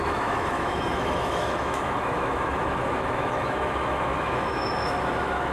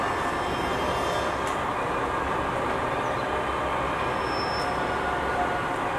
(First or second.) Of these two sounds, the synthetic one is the first